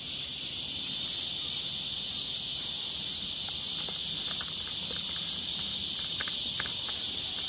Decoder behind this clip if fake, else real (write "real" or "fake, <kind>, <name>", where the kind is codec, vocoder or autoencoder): fake, vocoder, BigVGAN v2